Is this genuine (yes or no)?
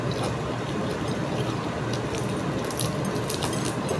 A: yes